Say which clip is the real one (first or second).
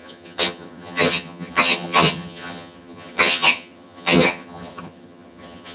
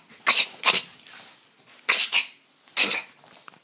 second